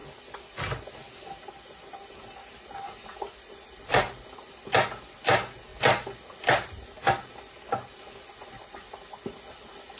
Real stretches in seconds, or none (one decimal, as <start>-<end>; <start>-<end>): 0.0-10.0